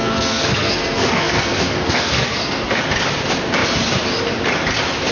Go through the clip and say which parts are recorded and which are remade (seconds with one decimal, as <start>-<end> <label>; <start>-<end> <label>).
0.0-2.8 remade; 2.8-5.1 recorded